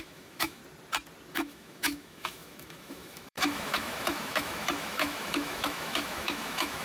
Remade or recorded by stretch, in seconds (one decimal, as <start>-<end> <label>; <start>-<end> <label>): 0.0-0.6 remade; 0.6-1.3 recorded; 1.3-6.8 remade